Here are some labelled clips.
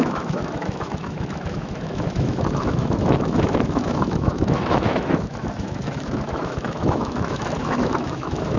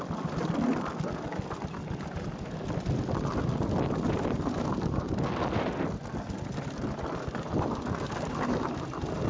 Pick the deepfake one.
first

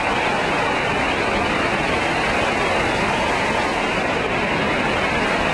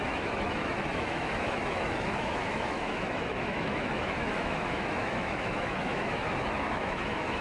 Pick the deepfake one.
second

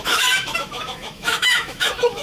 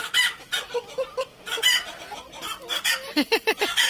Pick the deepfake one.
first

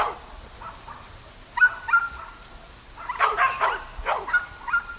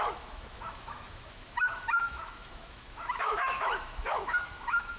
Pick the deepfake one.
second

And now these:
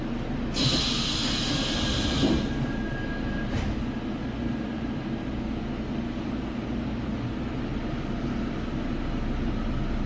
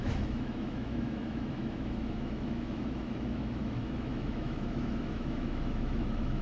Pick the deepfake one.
second